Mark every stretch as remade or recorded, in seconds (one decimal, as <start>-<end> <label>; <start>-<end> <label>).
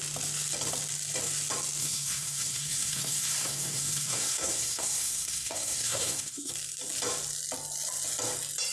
0.0-1.8 recorded; 1.8-6.5 remade; 6.5-8.7 recorded